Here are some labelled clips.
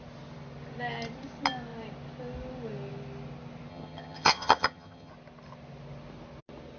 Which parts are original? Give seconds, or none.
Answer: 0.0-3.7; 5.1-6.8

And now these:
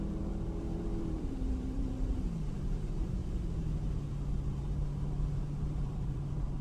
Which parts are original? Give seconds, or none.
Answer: 3.2-5.3

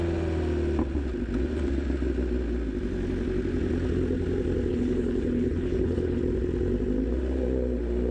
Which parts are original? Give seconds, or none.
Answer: 0.0-4.7; 6.2-8.1

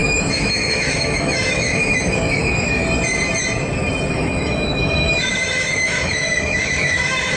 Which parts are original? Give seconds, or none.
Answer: 2.8-4.1

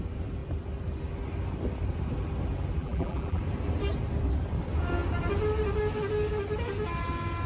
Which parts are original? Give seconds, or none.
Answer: 0.0-2.8; 3.4-7.5

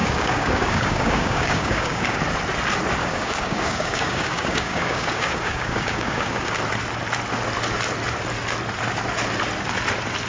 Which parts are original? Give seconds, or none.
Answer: 2.2-3.0; 6.6-10.3

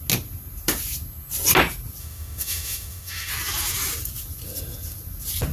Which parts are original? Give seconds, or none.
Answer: 0.0-2.0; 3.3-5.5

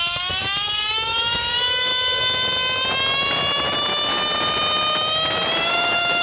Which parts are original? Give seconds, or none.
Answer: 1.9-5.6